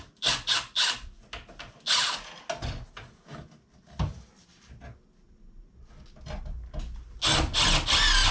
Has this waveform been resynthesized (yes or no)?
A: no